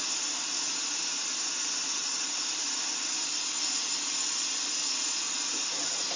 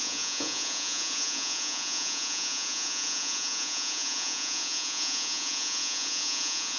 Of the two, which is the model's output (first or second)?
second